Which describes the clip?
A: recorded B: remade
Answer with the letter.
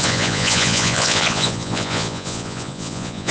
B